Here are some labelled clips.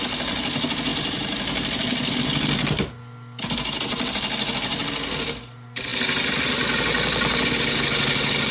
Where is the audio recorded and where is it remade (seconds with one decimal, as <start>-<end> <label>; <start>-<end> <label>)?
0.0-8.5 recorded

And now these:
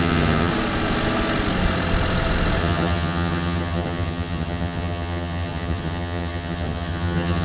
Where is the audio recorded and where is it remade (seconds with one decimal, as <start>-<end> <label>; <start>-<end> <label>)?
0.0-0.5 remade; 0.5-2.6 recorded; 2.6-7.4 remade

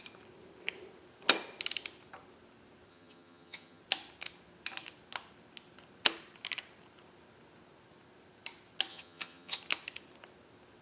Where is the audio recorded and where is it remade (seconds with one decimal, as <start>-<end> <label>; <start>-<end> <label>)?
0.0-2.9 recorded; 2.9-3.8 remade; 3.8-8.9 recorded; 8.9-9.6 remade; 9.6-10.8 recorded